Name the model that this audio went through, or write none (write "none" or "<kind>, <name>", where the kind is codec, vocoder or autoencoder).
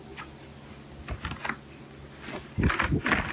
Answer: none